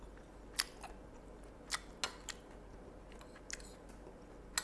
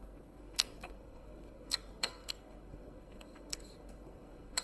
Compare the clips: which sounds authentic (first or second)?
first